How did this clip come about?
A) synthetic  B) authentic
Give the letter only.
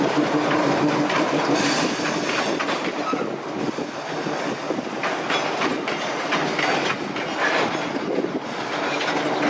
B